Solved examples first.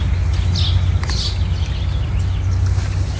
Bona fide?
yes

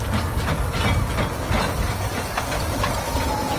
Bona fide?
yes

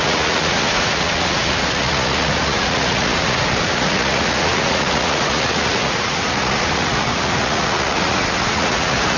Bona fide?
no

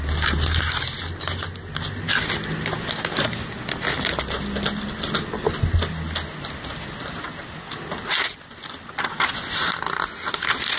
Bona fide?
yes